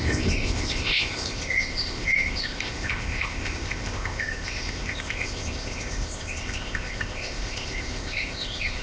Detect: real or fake fake